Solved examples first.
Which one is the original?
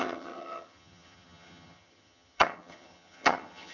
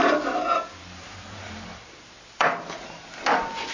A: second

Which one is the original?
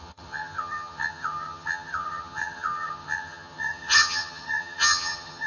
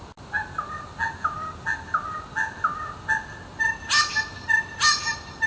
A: second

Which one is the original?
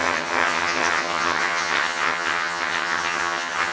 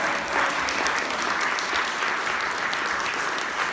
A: second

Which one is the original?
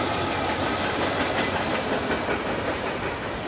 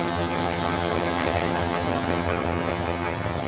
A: first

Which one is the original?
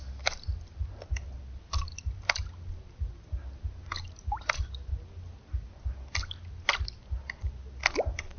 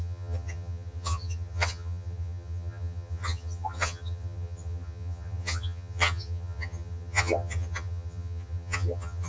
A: first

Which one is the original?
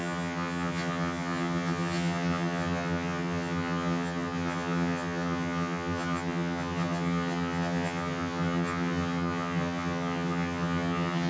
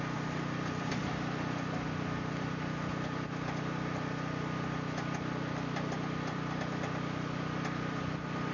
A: second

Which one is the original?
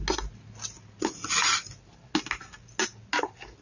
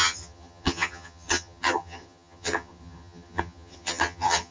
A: first